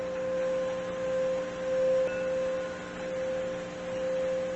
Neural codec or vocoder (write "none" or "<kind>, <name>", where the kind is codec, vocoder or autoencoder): none